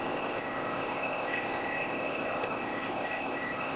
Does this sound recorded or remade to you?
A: remade